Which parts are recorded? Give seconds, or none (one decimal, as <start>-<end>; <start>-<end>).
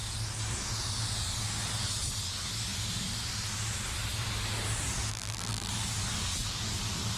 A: 0.0-5.1; 5.7-7.2